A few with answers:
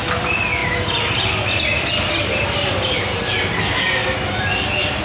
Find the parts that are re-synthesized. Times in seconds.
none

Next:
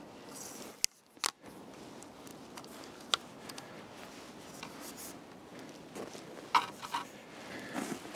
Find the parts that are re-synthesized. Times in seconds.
none

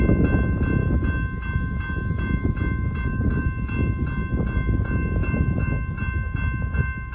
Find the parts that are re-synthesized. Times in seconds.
none

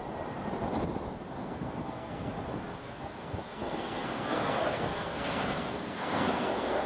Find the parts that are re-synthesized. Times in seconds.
1.4-2.3 (codec, SNAC); 2.8-6.9

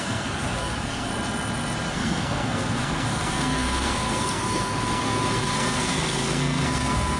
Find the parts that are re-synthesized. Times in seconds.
0.0-1.1 (codec, SNAC); 1.9-7.2